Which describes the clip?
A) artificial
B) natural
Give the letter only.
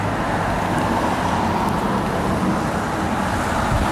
B